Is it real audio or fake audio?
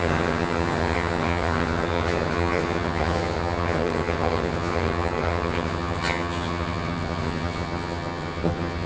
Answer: fake